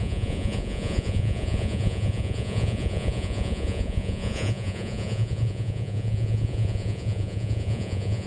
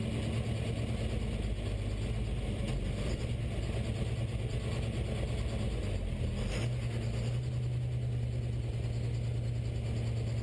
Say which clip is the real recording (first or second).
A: second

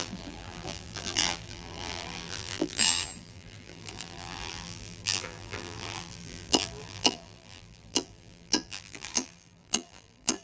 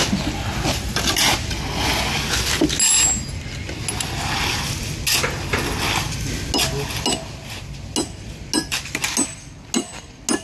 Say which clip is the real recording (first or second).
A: second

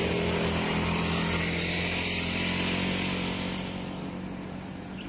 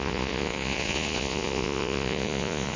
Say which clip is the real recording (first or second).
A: first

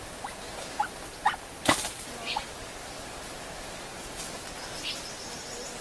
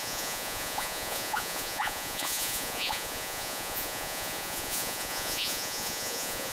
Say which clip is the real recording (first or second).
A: first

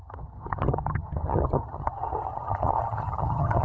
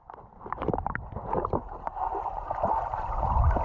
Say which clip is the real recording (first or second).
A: second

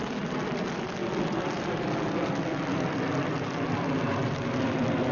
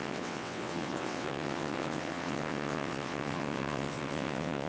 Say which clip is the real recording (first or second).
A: first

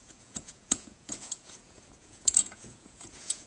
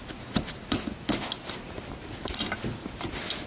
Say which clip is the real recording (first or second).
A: second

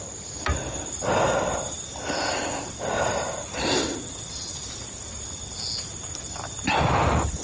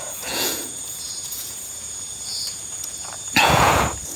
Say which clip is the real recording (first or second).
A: first